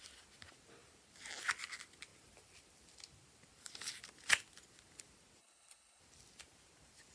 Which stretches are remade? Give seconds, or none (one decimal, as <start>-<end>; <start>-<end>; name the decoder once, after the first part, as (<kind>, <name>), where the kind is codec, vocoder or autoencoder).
5.4-6.0 (codec, HILCodec)